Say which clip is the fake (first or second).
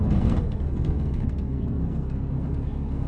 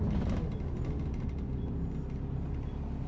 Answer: first